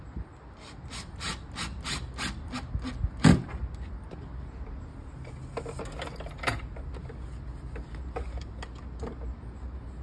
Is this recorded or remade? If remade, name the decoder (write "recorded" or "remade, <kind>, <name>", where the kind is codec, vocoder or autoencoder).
recorded